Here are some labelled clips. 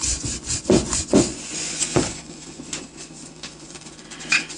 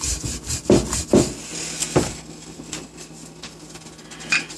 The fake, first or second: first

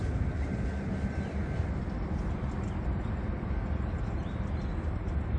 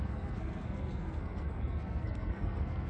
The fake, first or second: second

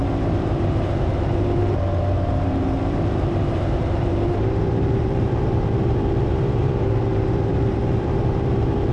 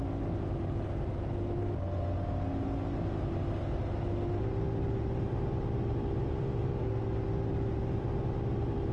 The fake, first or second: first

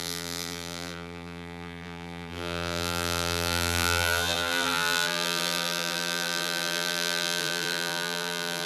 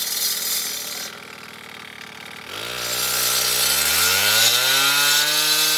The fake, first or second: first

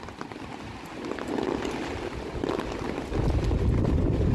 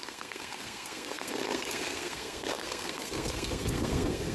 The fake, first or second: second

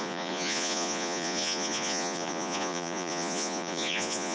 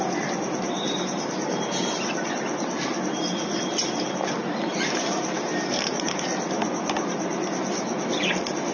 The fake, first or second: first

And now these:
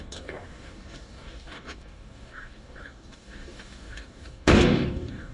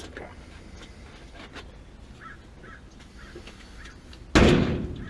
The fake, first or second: first